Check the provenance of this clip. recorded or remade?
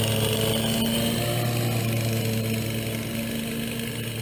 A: recorded